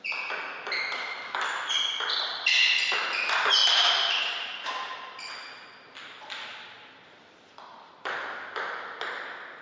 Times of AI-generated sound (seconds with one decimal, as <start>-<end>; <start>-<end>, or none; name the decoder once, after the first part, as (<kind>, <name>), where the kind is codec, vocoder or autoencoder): none